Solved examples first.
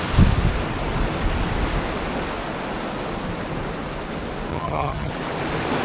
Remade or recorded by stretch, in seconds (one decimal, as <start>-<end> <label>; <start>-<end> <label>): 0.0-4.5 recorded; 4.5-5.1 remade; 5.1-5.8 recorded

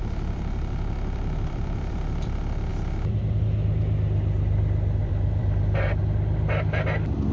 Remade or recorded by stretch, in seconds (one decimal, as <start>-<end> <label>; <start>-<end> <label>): 0.0-2.7 remade; 2.7-3.2 recorded; 3.2-7.3 remade

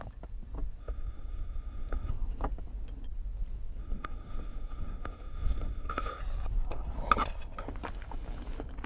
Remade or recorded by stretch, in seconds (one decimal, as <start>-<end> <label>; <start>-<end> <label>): 0.0-0.8 recorded; 0.8-2.1 remade; 2.1-3.8 recorded; 3.8-6.2 remade; 6.2-8.9 recorded

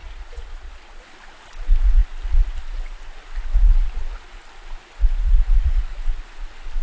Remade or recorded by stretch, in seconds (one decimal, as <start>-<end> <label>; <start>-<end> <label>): 0.0-1.0 remade; 1.0-6.8 recorded